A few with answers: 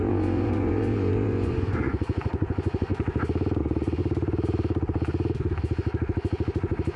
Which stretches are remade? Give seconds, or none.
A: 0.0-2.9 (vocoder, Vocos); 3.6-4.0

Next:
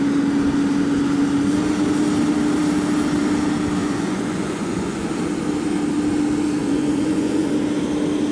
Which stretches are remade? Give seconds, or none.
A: 3.8-5.1 (vocoder, Vocos); 6.6-7.5

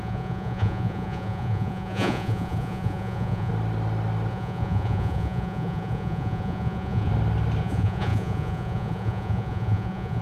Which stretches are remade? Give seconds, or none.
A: 0.0-3.5 (vocoder, Vocos); 4.3-7.1; 7.6-10.2

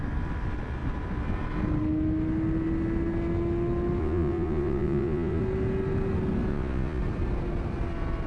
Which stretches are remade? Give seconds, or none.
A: 4.0-5.4 (vocoder, Vocos); 6.5-7.0

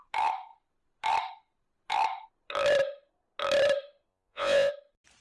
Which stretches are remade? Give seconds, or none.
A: 4.1-4.7 (vocoder, Vocos)

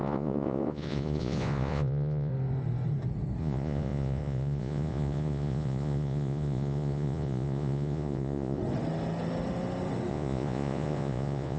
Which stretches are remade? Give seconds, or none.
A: 0.0-2.3 (vocoder, Vocos); 3.4-8.6; 10.1-11.6

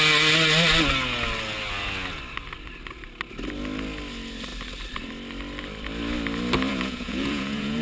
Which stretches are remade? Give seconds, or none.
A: 6.7-7.8 (vocoder, Vocos)